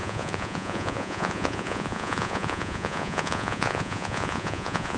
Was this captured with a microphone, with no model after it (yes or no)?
no